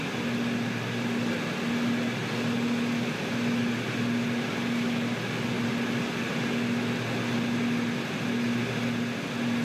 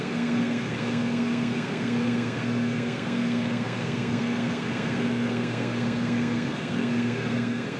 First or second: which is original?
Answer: first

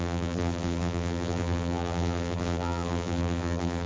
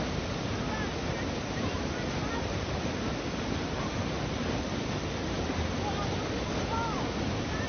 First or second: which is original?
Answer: second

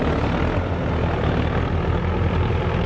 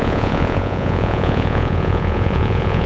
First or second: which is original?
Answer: first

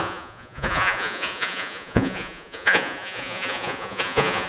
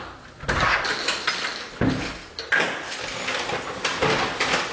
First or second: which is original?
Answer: second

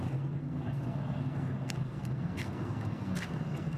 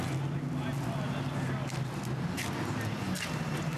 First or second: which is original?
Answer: second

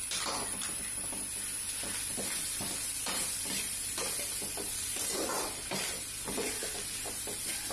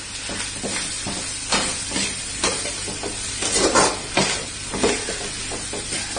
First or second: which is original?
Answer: second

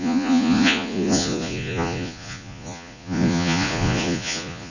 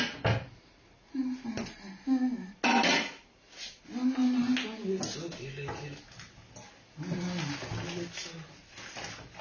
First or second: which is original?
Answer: second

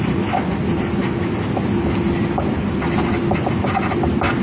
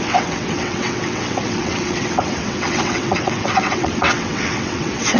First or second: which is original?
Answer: first